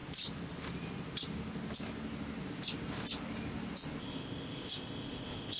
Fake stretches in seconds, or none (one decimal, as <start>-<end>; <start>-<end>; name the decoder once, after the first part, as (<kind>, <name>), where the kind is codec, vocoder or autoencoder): 4.0-5.6 (codec, ZipCodec)